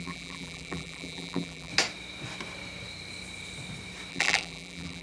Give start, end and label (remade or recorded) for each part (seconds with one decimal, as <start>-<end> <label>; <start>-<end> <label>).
0.0-1.7 remade; 1.7-4.1 recorded; 4.1-5.0 remade